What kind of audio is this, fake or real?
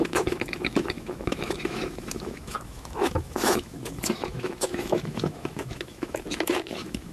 fake